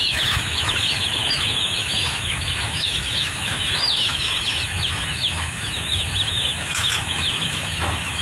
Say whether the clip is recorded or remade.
remade